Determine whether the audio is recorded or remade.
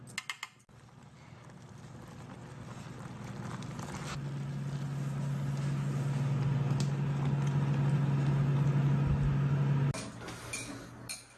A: recorded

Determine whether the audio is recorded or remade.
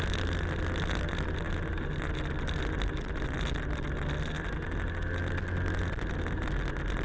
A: recorded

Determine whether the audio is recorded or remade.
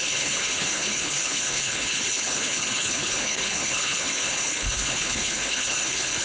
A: remade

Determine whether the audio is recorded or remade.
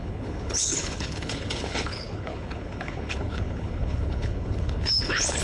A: remade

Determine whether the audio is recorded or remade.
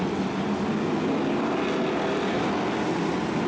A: recorded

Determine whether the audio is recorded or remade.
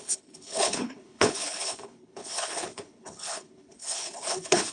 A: remade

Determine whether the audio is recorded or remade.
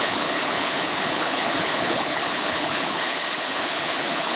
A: remade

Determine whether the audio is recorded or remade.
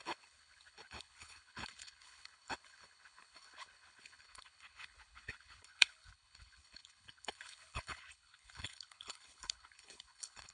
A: remade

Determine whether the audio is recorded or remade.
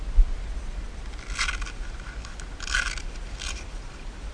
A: recorded